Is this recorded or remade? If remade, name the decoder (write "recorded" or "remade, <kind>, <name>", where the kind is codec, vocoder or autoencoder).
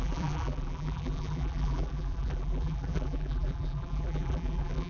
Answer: remade, vocoder, BigVGAN v2